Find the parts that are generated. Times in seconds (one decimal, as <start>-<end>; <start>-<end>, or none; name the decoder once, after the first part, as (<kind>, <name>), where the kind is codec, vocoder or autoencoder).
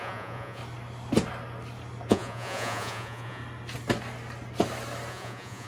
0.0-0.6 (vocoder, Vocos); 2.1-3.4; 5.1-5.7